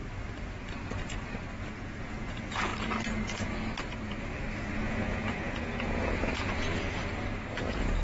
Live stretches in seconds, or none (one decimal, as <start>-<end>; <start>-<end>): 0.0-1.7; 2.7-4.7; 7.0-7.5